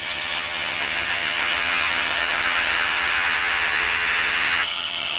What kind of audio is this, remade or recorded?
remade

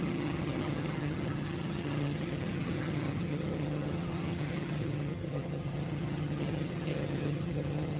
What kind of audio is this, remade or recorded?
remade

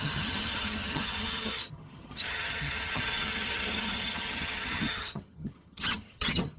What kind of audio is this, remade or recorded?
remade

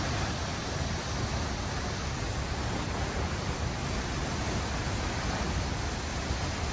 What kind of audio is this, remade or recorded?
recorded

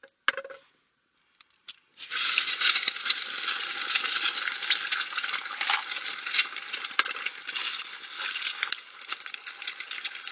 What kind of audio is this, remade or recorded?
recorded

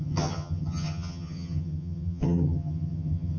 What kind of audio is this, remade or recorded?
remade